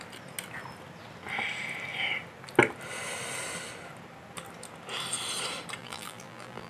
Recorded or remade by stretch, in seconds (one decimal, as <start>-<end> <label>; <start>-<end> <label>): 0.0-5.8 recorded; 5.8-6.7 remade